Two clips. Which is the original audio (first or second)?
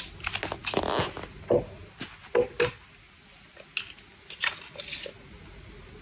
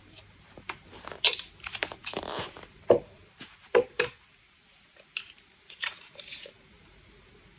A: first